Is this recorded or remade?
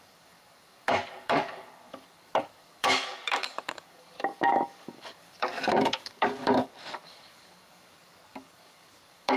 remade